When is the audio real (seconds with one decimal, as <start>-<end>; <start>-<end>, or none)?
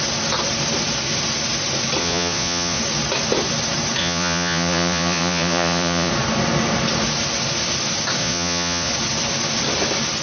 0.0-2.0; 2.8-4.0; 6.1-8.2; 8.9-10.2